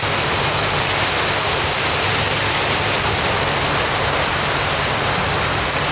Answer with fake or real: real